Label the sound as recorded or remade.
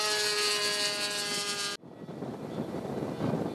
recorded